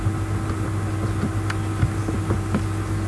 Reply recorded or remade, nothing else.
recorded